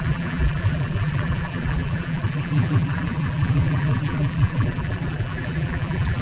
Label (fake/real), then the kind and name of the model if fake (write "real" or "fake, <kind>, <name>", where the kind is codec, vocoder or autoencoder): fake, vocoder, BigVGAN v2